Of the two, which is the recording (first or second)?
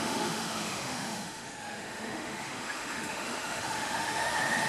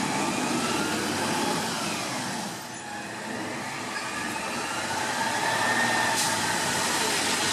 second